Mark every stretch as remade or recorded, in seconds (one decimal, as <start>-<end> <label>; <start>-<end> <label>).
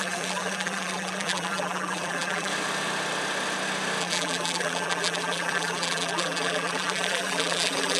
0.0-2.5 remade; 2.5-4.0 recorded; 4.0-8.0 remade